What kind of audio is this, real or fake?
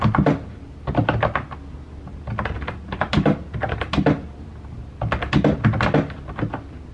real